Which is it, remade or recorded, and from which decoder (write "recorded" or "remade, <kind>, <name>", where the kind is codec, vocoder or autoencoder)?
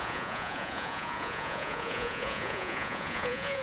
remade, vocoder, Vocos